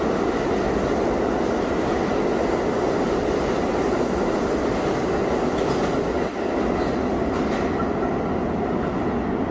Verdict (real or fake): real